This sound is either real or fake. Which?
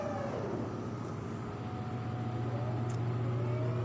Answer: real